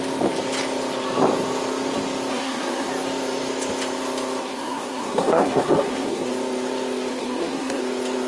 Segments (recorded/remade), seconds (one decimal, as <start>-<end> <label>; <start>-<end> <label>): 0.0-2.3 recorded; 2.3-2.9 remade; 2.9-4.4 recorded; 4.4-6.3 remade; 6.3-7.1 recorded; 7.1-7.8 remade; 7.8-8.3 recorded